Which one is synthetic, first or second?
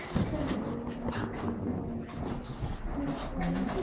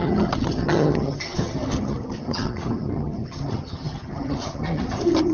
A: second